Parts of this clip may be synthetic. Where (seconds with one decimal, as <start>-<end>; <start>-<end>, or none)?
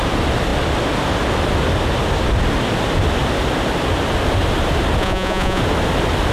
5.0-5.6